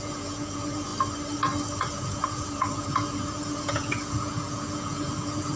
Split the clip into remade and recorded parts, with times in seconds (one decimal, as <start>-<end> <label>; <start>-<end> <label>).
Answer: 0.0-0.9 remade; 0.9-1.8 recorded; 1.8-5.6 remade